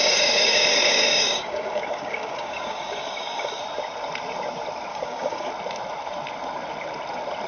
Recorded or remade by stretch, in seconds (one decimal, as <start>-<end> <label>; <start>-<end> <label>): 0.0-3.6 remade; 3.6-4.9 recorded; 4.9-5.5 remade; 5.5-7.5 recorded